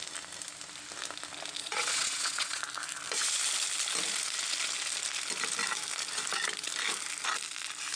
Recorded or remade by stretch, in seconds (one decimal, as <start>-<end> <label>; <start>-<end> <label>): 0.0-1.6 recorded; 1.6-2.6 remade; 2.6-8.0 recorded